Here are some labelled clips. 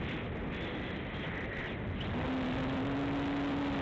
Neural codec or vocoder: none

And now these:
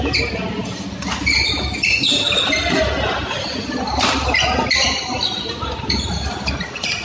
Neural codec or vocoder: none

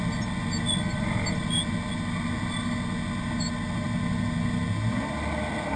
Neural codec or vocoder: none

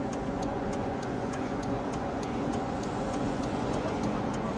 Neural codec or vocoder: vocoder, Vocos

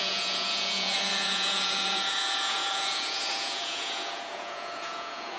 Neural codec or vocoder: vocoder, Vocos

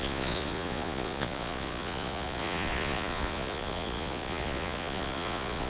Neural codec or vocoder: vocoder, Vocos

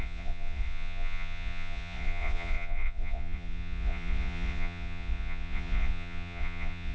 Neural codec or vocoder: vocoder, Vocos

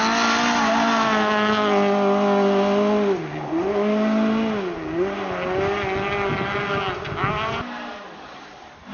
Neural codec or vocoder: none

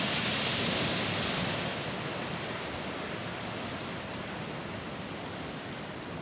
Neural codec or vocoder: none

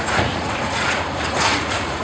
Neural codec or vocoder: vocoder, Vocos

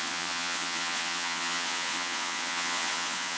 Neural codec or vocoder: vocoder, Vocos